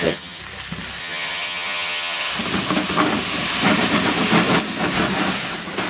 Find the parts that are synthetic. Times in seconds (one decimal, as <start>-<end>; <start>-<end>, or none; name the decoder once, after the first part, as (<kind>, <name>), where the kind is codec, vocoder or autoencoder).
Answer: 0.0-0.4 (vocoder, HiFi-GAN); 1.0-2.3